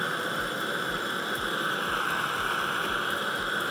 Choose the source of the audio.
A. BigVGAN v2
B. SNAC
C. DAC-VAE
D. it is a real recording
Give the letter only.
D